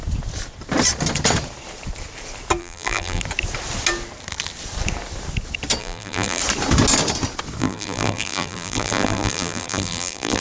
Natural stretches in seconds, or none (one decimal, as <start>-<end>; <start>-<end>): 0.0-2.6; 3.2-5.8; 6.4-7.6